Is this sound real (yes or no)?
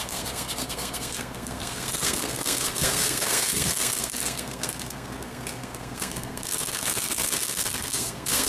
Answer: no